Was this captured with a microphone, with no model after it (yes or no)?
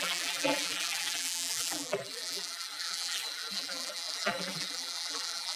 no